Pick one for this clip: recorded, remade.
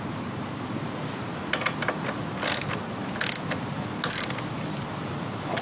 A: recorded